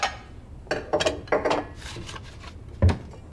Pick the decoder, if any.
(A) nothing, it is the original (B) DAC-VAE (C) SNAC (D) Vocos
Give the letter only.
A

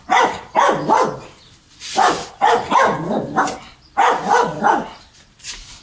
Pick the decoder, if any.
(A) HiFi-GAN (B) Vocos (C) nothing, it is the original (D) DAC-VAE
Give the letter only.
C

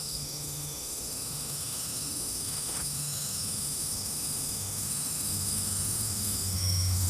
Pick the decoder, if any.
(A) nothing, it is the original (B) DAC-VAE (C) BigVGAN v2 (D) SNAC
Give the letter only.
B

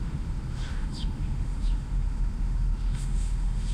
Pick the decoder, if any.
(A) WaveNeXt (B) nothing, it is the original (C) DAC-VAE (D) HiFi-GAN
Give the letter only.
C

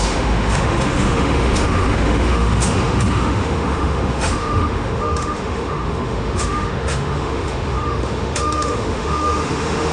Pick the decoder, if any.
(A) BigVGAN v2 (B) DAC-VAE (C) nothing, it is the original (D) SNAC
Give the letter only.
B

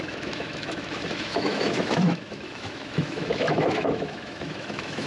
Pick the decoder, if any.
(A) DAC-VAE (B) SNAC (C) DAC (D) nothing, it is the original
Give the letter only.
A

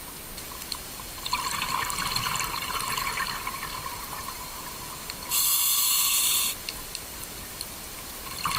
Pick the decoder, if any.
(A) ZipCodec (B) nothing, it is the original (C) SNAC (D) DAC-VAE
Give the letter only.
B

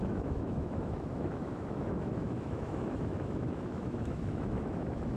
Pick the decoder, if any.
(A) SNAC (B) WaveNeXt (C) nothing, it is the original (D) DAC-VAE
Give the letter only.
D